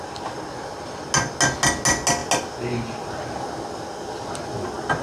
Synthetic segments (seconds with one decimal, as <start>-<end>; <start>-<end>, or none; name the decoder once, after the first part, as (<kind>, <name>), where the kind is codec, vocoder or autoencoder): none